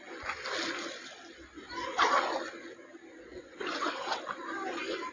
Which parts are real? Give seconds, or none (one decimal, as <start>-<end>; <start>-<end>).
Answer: 0.0-3.3; 4.2-5.1